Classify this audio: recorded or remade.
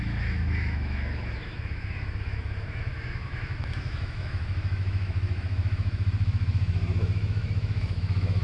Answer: remade